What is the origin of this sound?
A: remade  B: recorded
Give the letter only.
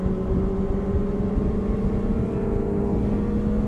B